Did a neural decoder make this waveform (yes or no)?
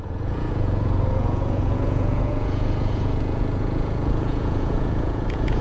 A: yes